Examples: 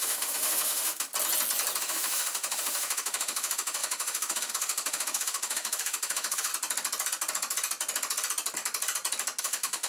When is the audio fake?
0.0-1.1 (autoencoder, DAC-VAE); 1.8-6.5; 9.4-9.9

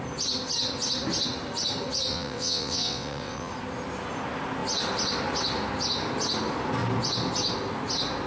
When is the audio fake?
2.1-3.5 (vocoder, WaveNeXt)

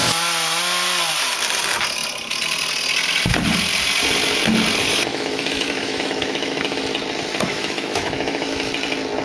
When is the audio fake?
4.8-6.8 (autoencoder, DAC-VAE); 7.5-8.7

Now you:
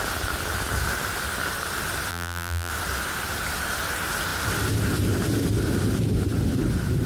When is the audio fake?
2.1-2.7 (vocoder, BigVGAN v2)

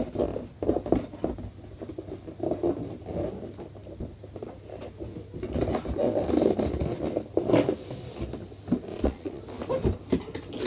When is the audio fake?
8.9-9.4 (vocoder, Vocos)

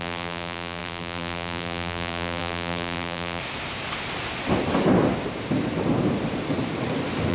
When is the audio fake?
0.0-3.4 (vocoder, BigVGAN v2)

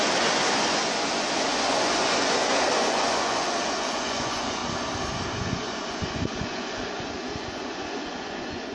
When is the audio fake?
0.0-4.6 (vocoder, Vocos); 5.4-8.7

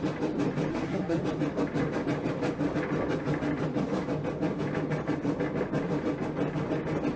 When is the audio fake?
0.7-1.2 (codec, SNAC)